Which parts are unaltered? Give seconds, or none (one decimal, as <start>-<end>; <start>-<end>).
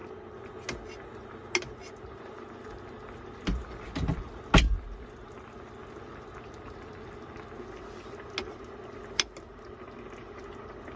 0.0-11.0